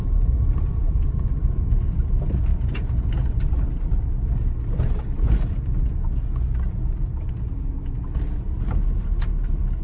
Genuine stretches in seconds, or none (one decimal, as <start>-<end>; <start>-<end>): 0.0-9.8